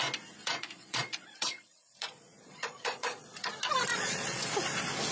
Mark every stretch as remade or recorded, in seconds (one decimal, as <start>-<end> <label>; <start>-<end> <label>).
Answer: 0.0-0.4 recorded; 0.4-3.5 remade; 3.5-3.9 recorded; 3.9-4.5 remade; 4.5-5.1 recorded